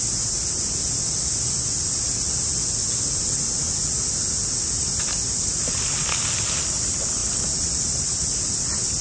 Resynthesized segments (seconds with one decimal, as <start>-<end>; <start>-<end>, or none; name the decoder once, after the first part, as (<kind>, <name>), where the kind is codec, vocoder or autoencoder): none